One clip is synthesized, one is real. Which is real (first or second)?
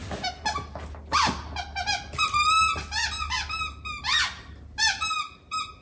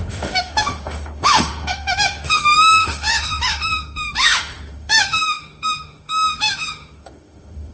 first